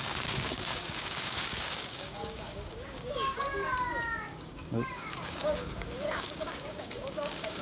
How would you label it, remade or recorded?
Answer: remade